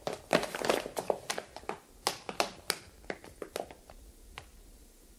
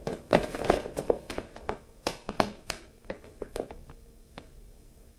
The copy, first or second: second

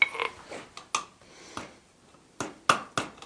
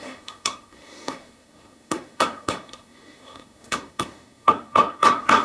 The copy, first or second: second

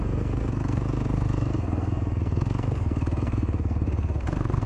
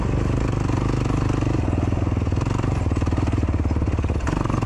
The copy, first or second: first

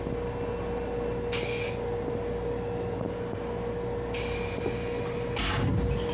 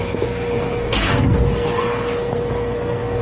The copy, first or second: second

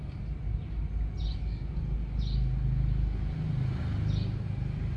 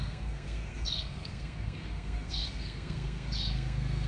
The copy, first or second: second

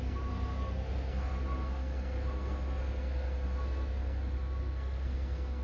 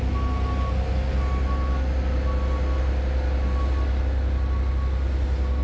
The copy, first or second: first